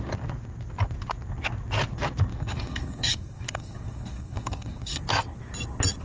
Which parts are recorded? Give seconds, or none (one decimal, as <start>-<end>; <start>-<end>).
0.0-2.3; 5.0-6.0